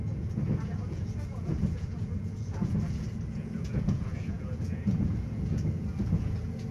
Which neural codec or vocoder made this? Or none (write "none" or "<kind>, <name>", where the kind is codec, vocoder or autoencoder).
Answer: vocoder, Vocos